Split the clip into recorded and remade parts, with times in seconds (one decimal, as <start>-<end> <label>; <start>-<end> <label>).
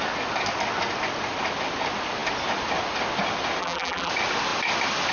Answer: 0.0-3.6 recorded; 3.6-4.1 remade; 4.1-5.1 recorded